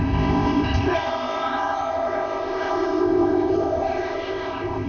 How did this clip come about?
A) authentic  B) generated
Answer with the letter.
B